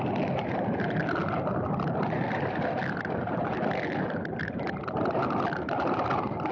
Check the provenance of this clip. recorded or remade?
recorded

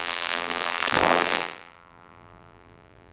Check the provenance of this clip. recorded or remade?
remade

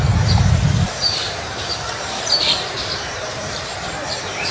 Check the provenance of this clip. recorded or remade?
remade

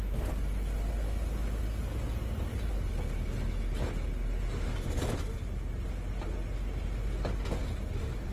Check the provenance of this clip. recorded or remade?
recorded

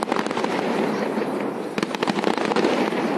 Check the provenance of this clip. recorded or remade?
recorded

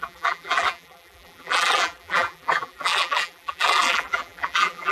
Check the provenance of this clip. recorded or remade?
remade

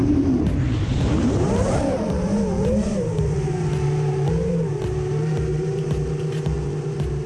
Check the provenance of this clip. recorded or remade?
remade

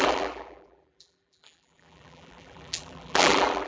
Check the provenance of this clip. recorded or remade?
remade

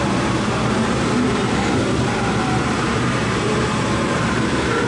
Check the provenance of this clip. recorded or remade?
remade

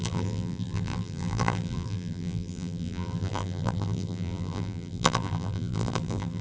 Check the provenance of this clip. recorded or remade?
remade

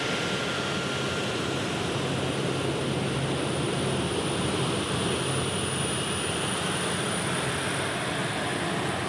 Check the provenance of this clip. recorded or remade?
recorded